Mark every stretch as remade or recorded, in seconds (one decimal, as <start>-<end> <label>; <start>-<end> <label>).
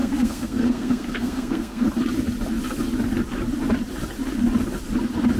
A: 0.0-1.9 remade; 1.9-5.4 recorded